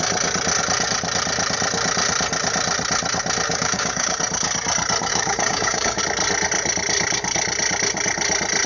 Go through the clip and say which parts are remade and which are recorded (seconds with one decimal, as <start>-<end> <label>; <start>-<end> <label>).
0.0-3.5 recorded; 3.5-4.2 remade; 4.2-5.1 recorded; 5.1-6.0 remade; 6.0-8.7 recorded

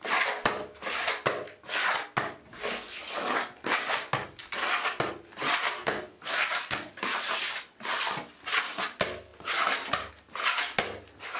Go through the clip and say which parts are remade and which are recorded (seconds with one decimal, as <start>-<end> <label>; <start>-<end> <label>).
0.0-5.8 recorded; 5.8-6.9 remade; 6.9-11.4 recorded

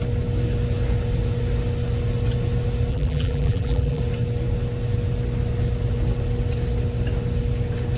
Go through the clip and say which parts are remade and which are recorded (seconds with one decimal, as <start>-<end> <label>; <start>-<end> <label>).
0.0-2.9 recorded; 2.9-4.0 remade; 4.0-8.0 recorded

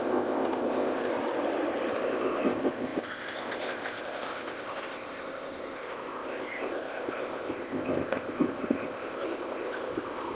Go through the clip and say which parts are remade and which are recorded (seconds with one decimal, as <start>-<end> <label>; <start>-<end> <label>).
0.0-1.1 remade; 1.1-2.0 recorded; 2.0-10.3 remade

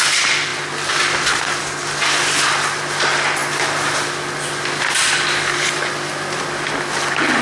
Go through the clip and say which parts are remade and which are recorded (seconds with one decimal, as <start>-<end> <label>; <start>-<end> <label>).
0.0-7.4 recorded

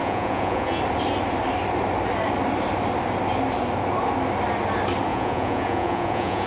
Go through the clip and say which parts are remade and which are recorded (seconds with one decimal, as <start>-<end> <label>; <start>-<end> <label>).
0.0-0.8 remade; 0.8-5.1 recorded; 5.1-6.5 remade

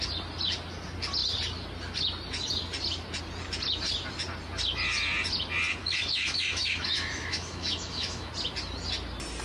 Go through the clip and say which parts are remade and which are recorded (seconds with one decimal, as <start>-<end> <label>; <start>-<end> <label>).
0.0-5.8 recorded; 5.8-8.3 remade; 8.3-9.4 recorded

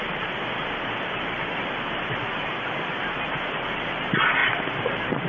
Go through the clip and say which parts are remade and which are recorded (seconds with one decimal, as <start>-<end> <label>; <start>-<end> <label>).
0.0-5.3 recorded